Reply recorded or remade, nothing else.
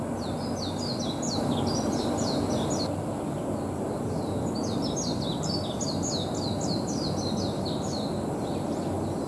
recorded